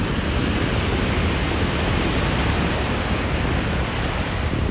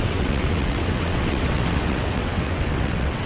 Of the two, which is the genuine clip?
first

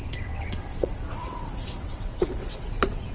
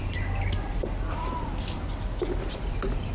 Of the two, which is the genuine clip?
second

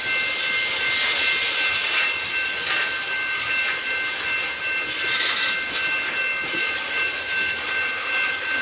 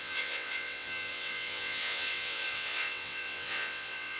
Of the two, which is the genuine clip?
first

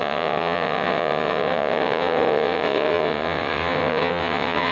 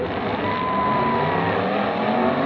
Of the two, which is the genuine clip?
second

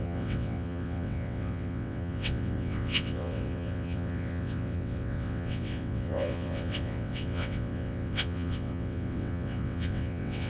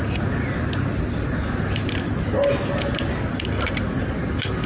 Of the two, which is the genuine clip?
second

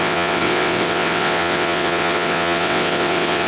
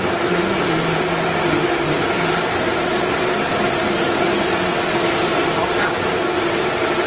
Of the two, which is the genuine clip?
second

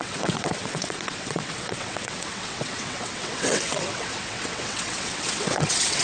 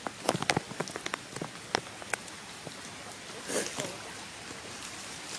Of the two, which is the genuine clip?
second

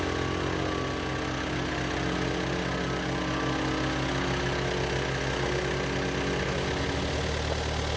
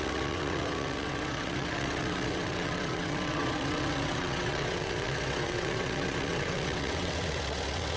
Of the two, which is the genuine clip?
first